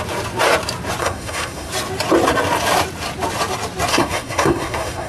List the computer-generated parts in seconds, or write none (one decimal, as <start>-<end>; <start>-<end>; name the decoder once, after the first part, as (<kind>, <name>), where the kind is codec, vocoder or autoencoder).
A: 1.0-1.7 (codec, SNAC); 3.9-5.1